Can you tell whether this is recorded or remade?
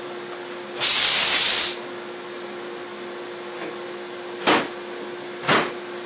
recorded